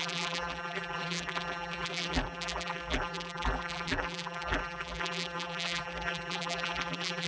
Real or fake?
fake